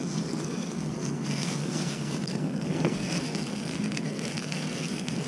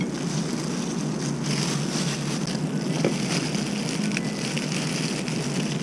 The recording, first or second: second